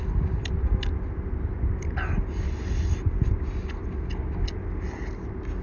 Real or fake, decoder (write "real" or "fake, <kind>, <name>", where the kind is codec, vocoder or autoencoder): real